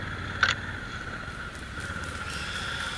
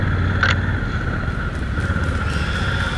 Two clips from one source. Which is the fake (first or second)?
first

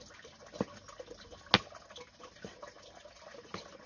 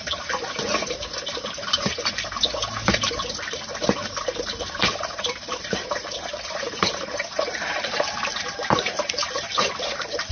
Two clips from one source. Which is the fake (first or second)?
second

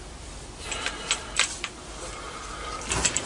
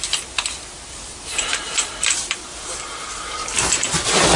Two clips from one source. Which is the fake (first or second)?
second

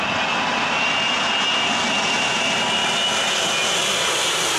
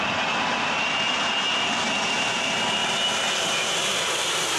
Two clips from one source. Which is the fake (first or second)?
second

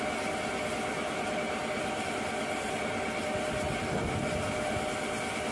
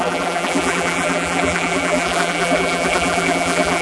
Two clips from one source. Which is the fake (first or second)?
second